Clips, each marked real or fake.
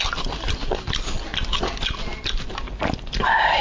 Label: real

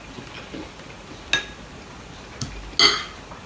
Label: real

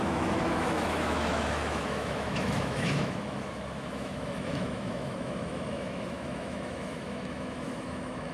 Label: fake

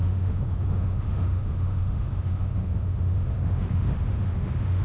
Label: fake